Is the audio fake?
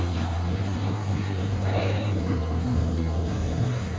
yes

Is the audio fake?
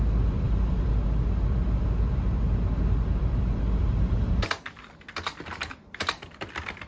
yes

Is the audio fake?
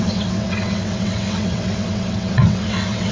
yes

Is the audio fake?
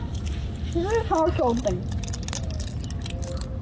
no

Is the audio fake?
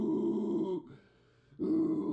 no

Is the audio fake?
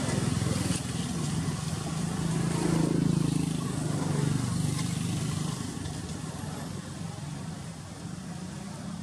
no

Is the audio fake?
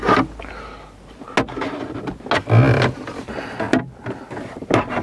no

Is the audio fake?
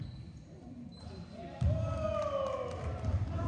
no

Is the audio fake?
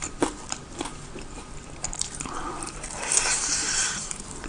yes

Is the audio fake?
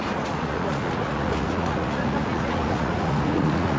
yes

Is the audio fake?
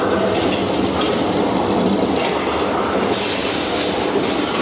no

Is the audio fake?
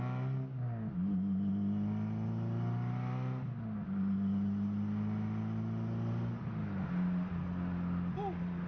no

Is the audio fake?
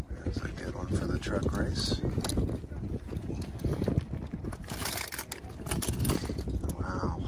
no